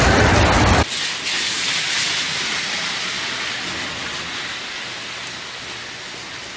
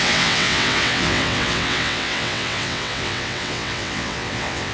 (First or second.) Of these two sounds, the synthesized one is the second